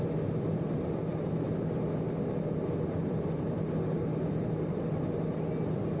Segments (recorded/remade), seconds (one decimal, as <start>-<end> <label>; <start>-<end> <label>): 0.0-6.0 recorded